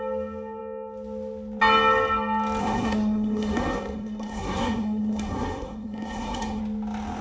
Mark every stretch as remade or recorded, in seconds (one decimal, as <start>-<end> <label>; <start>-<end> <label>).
0.0-2.6 recorded; 2.6-6.6 remade; 6.6-7.2 recorded

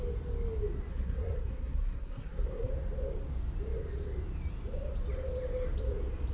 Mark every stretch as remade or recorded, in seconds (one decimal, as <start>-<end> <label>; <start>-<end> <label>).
0.0-0.9 recorded; 0.9-2.7 remade; 2.7-6.3 recorded